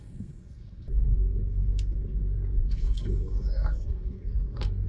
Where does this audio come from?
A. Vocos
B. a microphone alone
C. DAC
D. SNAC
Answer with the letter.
D